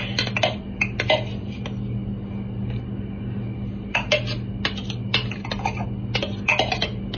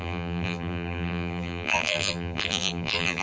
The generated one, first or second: second